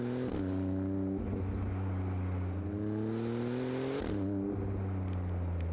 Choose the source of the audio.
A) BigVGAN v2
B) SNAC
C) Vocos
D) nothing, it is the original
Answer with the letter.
D